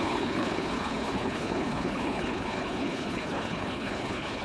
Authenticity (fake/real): fake